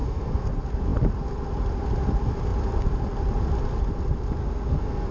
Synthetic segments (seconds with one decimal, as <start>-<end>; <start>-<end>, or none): 0.0-0.5; 4.4-5.1